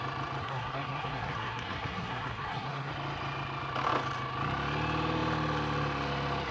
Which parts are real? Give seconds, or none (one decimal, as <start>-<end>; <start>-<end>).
0.0-0.4; 2.9-6.5